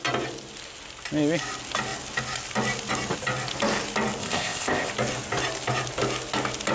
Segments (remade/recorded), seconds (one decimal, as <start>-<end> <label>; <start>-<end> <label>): 0.0-4.2 recorded; 4.2-4.9 remade; 4.9-6.7 recorded

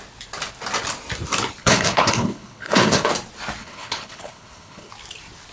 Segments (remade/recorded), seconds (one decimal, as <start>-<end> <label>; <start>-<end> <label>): 0.0-1.6 recorded; 1.6-3.1 remade; 3.1-3.6 recorded; 3.6-4.9 remade; 4.9-5.5 recorded

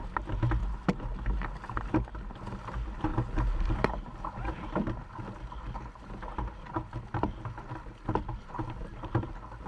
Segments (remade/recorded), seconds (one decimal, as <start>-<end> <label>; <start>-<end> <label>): 0.0-9.7 recorded